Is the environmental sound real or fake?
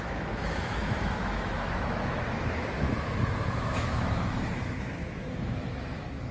fake